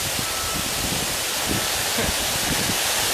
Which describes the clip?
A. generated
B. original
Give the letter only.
B